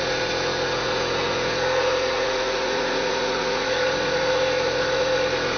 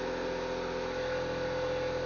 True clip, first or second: second